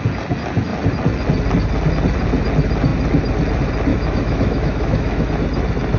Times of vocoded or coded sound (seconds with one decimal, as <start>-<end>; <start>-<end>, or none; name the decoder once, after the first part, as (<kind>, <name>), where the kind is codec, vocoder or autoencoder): 3.9-5.3 (autoencoder, DAC-VAE)